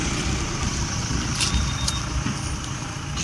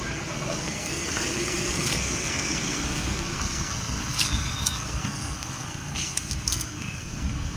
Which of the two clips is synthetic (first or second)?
second